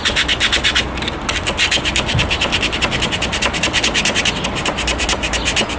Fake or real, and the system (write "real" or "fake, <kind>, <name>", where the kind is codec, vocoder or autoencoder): real